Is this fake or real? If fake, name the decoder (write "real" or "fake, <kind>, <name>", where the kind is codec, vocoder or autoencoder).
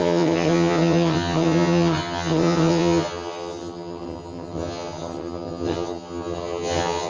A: fake, vocoder, HiFi-GAN